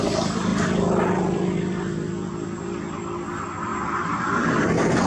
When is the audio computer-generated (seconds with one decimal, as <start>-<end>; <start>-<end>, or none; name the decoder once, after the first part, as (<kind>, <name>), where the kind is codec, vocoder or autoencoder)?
3.7-5.1 (vocoder, BigVGAN v2)